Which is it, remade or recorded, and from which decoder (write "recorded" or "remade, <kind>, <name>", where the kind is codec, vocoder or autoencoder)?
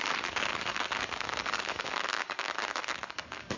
remade, codec, DAC